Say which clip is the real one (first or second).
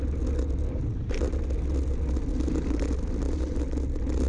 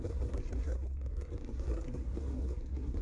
first